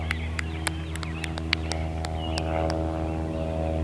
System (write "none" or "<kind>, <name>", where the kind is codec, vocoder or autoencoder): none